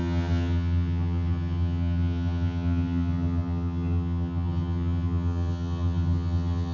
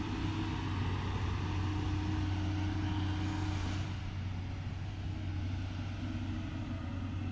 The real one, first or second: second